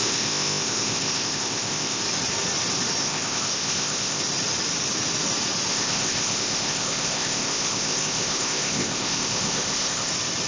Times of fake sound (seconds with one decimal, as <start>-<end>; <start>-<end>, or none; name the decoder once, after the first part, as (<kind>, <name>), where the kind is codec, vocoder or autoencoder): 0.0-2.0 (codec, ZipCodec); 3.0-4.2; 5.7-10.1